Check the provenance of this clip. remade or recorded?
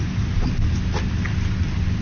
recorded